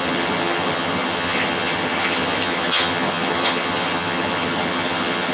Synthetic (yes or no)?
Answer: yes